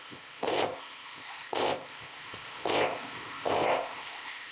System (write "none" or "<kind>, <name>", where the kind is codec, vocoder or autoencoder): codec, ZipCodec